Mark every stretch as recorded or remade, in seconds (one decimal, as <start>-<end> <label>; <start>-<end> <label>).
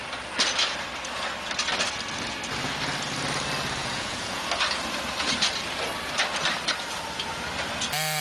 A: 0.0-3.8 recorded; 3.8-4.4 remade; 4.4-8.2 recorded